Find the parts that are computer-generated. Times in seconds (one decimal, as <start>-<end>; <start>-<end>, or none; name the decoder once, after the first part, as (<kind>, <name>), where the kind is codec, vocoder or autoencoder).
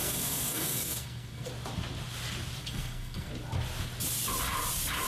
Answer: 0.0-1.5 (codec, SNAC); 2.6-3.3